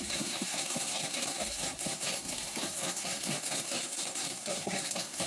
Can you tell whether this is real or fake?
fake